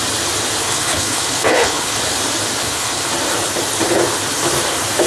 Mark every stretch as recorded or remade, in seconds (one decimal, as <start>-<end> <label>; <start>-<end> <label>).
0.0-0.6 recorded; 0.6-2.0 remade; 2.0-2.6 recorded; 2.6-3.1 remade; 3.1-5.1 recorded